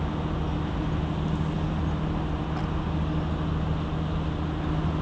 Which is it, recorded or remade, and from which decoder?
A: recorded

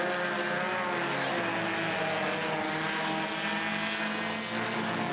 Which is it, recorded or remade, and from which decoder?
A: recorded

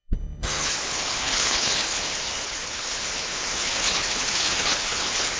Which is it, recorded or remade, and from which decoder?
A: remade, codec, HILCodec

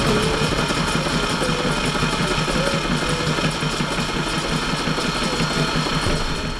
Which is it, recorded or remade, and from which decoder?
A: recorded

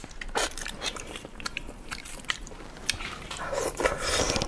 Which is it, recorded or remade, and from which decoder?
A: remade, vocoder, BigVGAN v2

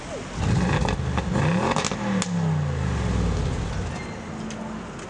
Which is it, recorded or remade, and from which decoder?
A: recorded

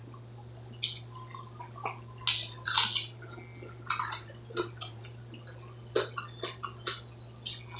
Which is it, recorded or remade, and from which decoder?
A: recorded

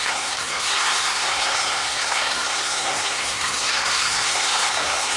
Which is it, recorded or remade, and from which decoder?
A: remade, codec, SNAC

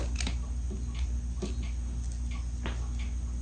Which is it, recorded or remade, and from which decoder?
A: recorded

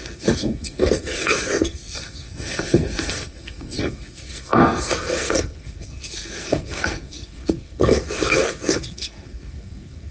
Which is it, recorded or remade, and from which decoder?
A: remade, codec, SNAC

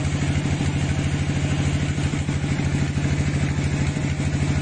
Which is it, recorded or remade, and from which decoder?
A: recorded